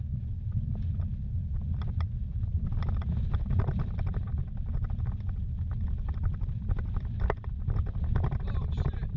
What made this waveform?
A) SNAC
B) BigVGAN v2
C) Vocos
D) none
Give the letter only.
D